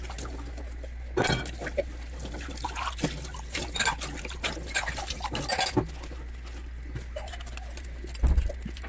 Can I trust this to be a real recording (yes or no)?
yes